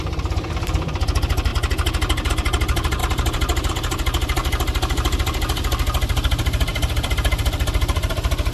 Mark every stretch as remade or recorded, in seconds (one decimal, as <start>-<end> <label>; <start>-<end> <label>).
0.0-1.5 remade; 1.5-2.3 recorded; 2.3-4.4 remade; 4.4-5.2 recorded; 5.2-8.5 remade